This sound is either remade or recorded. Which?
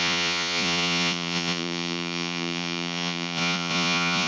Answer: remade